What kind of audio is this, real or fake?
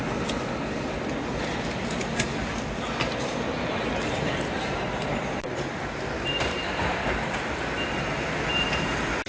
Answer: real